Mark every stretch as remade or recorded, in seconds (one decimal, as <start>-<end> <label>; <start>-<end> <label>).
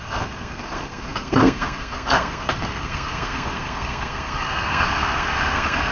0.0-5.9 remade